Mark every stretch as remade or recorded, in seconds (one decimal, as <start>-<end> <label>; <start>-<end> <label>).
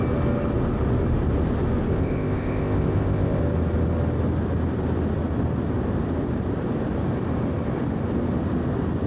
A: 0.0-1.9 recorded; 1.9-3.4 remade; 3.4-9.1 recorded